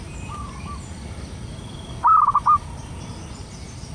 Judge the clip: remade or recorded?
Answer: recorded